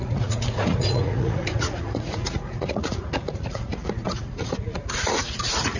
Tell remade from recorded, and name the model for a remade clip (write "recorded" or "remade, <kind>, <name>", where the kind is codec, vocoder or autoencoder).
remade, vocoder, Vocos